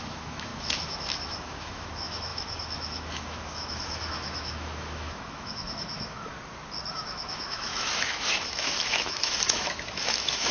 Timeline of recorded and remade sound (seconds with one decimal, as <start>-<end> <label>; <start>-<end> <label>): 0.0-6.3 remade; 6.3-6.9 recorded; 6.9-10.5 remade

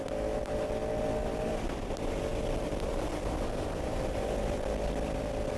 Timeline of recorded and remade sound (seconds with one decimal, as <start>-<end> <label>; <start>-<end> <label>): 0.0-5.6 recorded

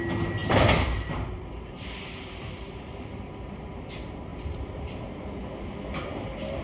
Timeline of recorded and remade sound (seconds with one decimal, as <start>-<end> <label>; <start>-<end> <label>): 0.0-0.4 recorded; 0.4-3.0 remade; 3.0-6.6 recorded

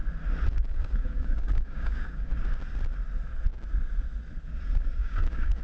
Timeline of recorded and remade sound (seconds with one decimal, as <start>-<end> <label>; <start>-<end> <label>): 0.0-0.5 recorded; 0.5-2.3 remade; 2.3-5.0 recorded; 5.0-5.6 remade

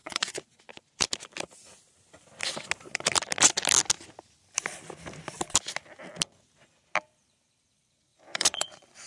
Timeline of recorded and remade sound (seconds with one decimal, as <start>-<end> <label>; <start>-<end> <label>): 0.0-0.6 remade; 0.6-8.1 recorded; 8.1-9.1 remade

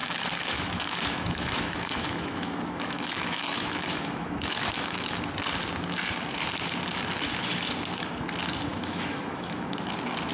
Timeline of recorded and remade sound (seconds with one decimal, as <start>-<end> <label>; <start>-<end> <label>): 0.0-5.2 remade; 5.2-8.7 recorded; 8.7-9.7 remade; 9.7-10.3 recorded

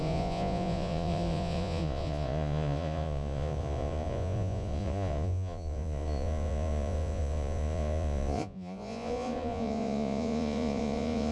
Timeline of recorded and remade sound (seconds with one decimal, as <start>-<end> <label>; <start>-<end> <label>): 0.0-11.3 remade